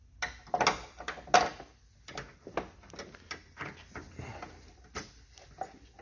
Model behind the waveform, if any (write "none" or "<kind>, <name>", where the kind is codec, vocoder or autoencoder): none